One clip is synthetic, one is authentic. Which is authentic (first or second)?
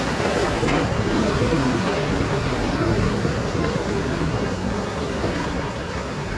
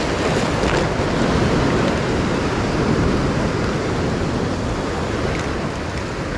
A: second